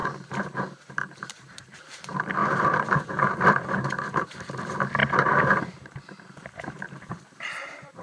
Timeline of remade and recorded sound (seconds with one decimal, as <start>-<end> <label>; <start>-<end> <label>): 0.0-8.0 remade

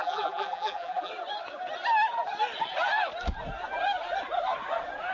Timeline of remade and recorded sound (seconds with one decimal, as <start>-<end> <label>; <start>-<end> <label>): 0.0-1.1 remade; 1.1-5.1 recorded